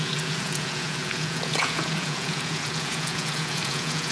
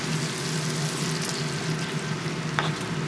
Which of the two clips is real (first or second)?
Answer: second